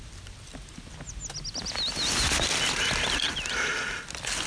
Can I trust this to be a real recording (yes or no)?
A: yes